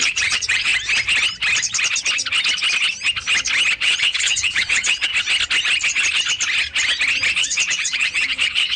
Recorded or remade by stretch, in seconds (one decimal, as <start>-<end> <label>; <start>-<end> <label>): 0.0-0.7 remade; 0.7-3.8 recorded; 3.8-5.1 remade; 5.1-7.4 recorded; 7.4-8.8 remade